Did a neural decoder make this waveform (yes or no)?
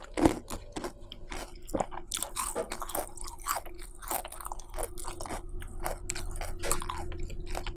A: no